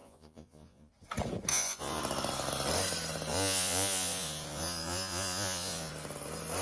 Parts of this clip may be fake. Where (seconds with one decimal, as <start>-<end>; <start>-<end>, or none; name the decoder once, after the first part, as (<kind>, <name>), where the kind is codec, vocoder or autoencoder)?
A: 0.0-0.9 (vocoder, Vocos); 1.5-2.0; 3.3-5.9